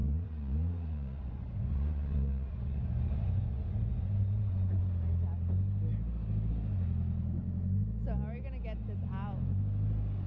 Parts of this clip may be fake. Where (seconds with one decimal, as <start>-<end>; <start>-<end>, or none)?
0.0-4.8